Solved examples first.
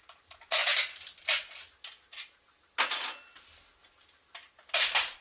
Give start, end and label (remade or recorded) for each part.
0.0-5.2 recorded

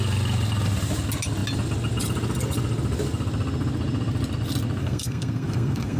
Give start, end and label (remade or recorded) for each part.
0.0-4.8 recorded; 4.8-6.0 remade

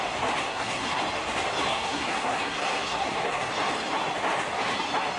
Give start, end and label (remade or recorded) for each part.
0.0-0.4 recorded; 0.4-1.0 remade; 1.0-1.7 recorded; 1.7-3.5 remade; 3.5-5.2 recorded